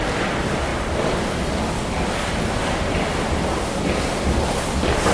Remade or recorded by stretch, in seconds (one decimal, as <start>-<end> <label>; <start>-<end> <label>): 0.0-5.1 recorded